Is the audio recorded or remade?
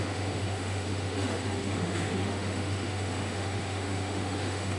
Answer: remade